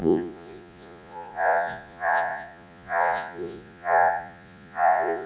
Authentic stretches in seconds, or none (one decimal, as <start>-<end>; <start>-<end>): none